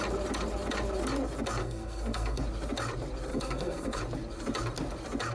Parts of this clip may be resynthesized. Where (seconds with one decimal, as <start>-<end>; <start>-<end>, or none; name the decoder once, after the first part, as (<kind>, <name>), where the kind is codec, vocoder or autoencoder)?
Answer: 1.6-2.4 (codec, SNAC); 3.3-4.0